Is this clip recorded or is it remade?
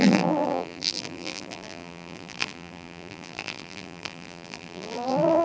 remade